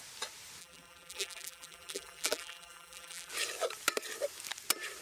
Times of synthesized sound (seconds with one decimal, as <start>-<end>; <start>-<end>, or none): 0.6-3.3